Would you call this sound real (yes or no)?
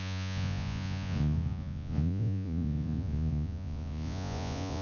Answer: no